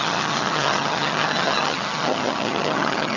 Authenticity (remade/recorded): remade